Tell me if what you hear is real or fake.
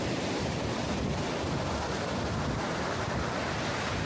real